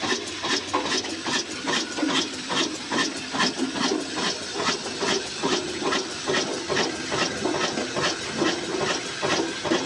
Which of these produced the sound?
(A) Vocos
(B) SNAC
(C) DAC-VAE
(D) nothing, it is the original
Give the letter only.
D